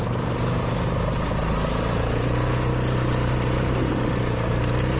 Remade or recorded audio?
remade